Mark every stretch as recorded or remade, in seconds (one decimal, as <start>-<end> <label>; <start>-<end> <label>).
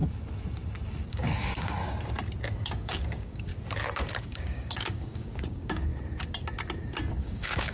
0.0-1.1 recorded; 1.1-1.8 remade; 1.8-2.6 recorded; 2.6-3.5 remade; 3.5-4.2 recorded; 4.2-5.9 remade; 5.9-7.1 recorded; 7.1-7.7 remade